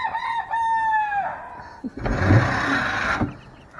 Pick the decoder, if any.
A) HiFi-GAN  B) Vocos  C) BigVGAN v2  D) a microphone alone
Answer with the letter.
D